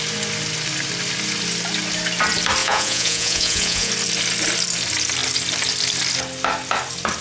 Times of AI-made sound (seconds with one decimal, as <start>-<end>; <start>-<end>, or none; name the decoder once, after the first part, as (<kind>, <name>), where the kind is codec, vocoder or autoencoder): 2.6-3.9 (vocoder, Vocos)